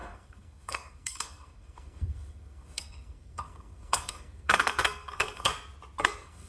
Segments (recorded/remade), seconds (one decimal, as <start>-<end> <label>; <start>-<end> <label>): 0.0-5.5 remade; 5.5-6.0 recorded; 6.0-6.5 remade